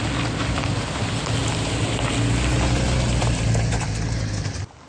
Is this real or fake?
real